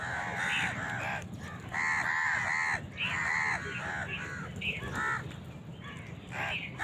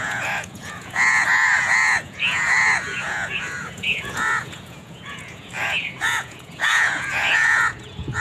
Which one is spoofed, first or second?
second